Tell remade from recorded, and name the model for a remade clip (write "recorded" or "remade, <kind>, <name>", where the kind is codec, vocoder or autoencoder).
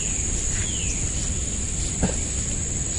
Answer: recorded